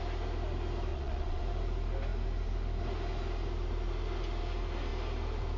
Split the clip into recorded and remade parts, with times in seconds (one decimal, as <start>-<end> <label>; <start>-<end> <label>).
0.0-0.9 recorded; 0.9-1.4 remade; 1.4-5.6 recorded